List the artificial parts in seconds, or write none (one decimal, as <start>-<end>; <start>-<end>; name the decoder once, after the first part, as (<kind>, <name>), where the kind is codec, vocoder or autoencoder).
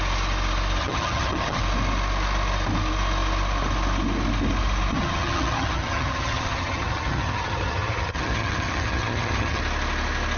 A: 0.8-1.6 (vocoder, HiFi-GAN); 4.9-9.6